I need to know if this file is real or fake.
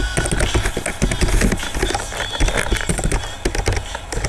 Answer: real